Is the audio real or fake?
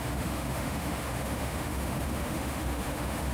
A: fake